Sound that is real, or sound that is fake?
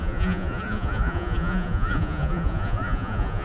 fake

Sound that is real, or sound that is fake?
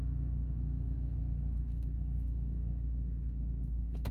fake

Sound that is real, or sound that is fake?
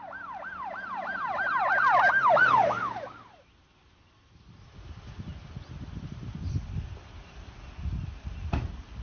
real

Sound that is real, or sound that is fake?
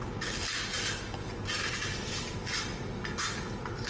real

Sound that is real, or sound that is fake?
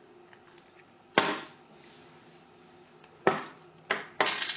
real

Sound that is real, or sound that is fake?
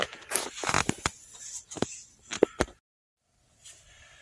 real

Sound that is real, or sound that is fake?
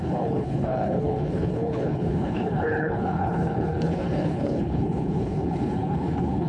fake